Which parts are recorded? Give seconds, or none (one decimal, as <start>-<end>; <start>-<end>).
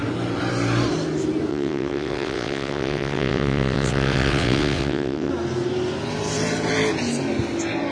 0.0-1.5; 5.3-7.9